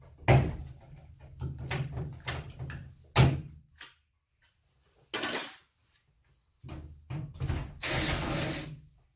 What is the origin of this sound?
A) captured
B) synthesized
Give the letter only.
A